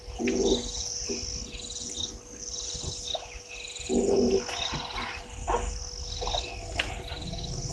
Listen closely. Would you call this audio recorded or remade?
recorded